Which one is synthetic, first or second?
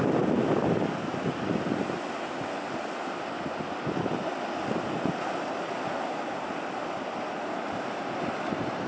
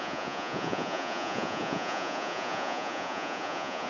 second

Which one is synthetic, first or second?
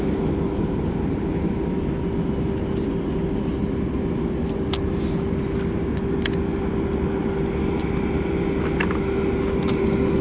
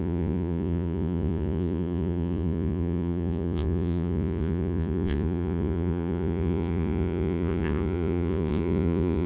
second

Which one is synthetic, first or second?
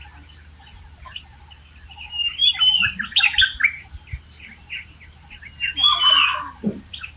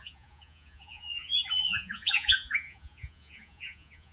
second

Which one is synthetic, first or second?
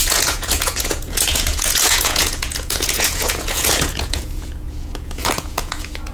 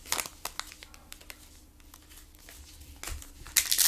first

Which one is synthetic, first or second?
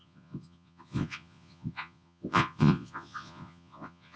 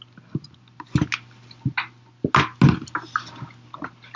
first